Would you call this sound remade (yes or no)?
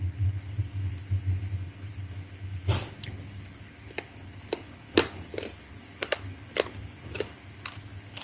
no